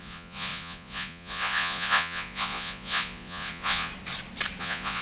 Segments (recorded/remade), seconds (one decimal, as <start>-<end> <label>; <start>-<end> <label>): 0.0-3.9 remade; 3.9-4.6 recorded; 4.6-5.0 remade